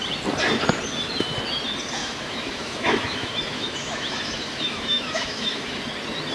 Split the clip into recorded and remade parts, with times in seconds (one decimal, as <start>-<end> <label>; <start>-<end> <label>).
0.0-2.0 recorded; 2.0-5.8 remade; 5.8-6.3 recorded